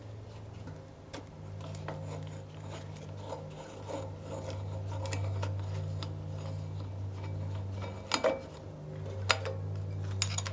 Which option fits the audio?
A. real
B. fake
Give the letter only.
A